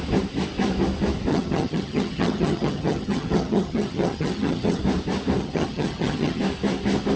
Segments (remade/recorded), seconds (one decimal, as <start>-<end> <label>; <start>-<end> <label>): 0.0-1.3 recorded; 1.3-4.8 remade; 4.8-5.4 recorded; 5.4-6.4 remade; 6.4-7.2 recorded